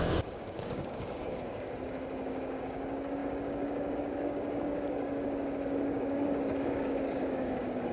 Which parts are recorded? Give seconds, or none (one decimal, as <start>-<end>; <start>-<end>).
none